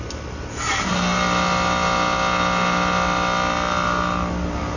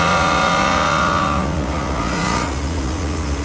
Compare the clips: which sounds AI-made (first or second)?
second